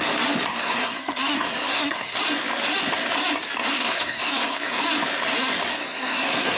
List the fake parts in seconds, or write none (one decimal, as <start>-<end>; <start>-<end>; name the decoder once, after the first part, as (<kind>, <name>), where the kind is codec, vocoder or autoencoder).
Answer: 0.6-2.2 (codec, SNAC); 3.7-4.8; 5.7-6.6